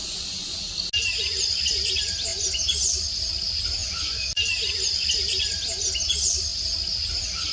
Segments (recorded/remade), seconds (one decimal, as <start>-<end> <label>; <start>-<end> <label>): 0.0-0.6 remade; 0.6-3.8 recorded; 3.8-4.3 remade; 4.3-7.5 recorded